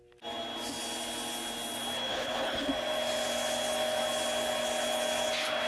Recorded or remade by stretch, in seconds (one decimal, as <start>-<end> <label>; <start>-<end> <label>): 0.0-2.1 recorded; 2.1-2.7 remade; 2.7-5.7 recorded